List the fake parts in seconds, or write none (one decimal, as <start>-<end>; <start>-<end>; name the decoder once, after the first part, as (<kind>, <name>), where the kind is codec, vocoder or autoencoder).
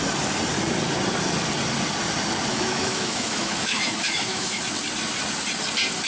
2.5-4.6 (autoencoder, DAC-VAE)